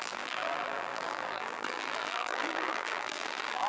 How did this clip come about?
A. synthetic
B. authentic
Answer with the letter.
A